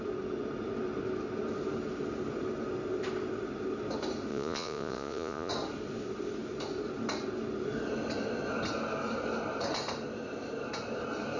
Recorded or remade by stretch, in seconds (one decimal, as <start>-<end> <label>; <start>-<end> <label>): 0.0-4.3 recorded; 4.3-5.5 remade; 5.5-11.4 recorded